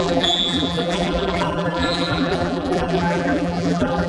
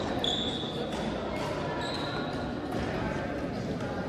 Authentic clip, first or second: second